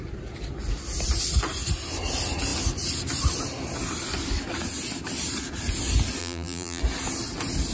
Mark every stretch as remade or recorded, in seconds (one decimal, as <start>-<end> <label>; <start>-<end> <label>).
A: 0.0-6.2 recorded; 6.2-6.8 remade; 6.8-7.7 recorded